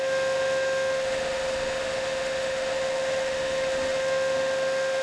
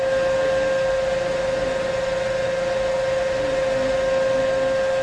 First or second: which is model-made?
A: first